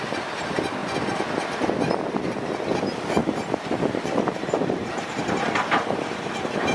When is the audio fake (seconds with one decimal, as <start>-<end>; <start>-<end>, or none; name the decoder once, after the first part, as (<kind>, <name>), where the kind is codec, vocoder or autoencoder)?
3.2-6.3 (vocoder, BigVGAN v2)